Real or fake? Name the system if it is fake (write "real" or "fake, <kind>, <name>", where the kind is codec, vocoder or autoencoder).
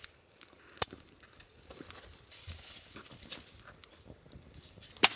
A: real